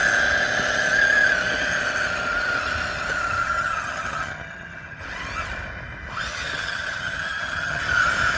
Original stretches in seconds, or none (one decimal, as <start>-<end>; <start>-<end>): 0.0-3.4; 5.0-6.3; 7.8-8.4